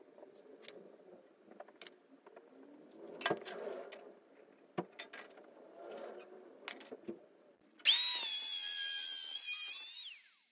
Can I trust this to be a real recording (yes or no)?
yes